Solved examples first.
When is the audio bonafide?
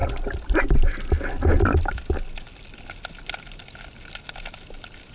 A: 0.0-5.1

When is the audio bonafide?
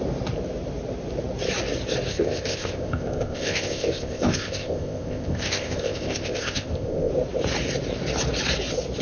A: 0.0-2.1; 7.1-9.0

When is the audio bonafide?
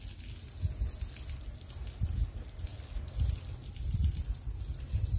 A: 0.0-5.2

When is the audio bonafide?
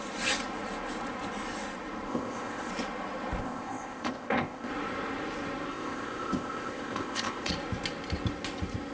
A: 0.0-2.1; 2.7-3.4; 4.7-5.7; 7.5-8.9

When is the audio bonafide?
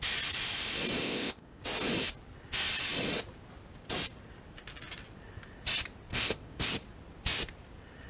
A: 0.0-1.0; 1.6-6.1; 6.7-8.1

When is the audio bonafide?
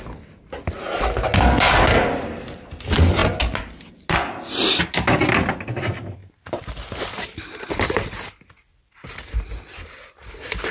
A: 0.0-10.7